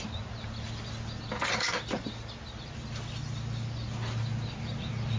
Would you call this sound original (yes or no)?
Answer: yes